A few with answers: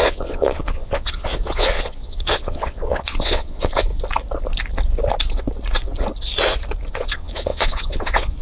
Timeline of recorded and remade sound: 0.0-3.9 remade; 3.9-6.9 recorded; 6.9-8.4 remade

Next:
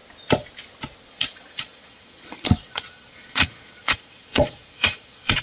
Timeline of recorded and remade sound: 0.0-1.1 recorded; 1.1-5.4 remade